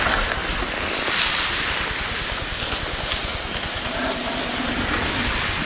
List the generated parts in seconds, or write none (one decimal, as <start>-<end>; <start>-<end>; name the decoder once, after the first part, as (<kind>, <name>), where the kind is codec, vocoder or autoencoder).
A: 3.2-4.1 (vocoder, BigVGAN v2)